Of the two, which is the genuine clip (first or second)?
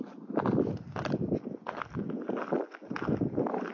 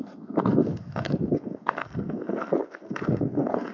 first